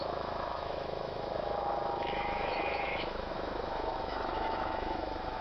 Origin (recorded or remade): remade